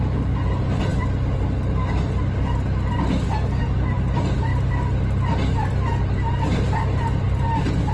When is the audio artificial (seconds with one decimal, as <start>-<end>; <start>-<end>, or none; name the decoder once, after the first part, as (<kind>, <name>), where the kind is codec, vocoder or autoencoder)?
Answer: none